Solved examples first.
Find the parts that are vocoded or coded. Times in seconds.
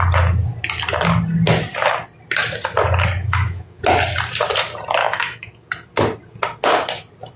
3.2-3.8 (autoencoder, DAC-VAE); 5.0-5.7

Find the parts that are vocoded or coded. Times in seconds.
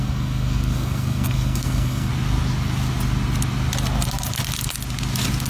0.0-2.1 (codec, SNAC)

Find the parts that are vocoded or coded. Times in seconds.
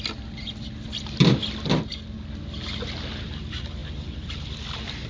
none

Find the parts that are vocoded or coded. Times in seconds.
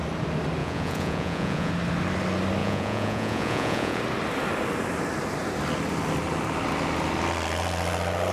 0.6-1.7 (vocoder, Vocos); 2.6-4.0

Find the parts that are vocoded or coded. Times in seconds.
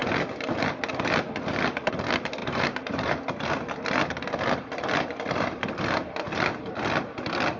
2.4-3.2 (vocoder, BigVGAN v2)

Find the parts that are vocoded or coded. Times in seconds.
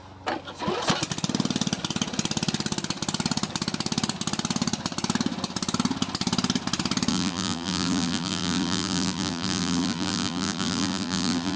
7.1-11.6 (vocoder, BigVGAN v2)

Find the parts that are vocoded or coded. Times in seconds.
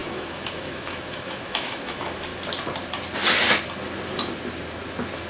0.0-2.3 (autoencoder, DAC-VAE)